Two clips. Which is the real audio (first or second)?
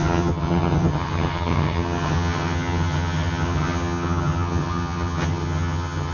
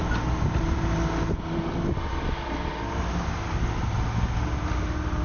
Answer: second